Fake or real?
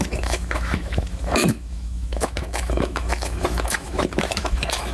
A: fake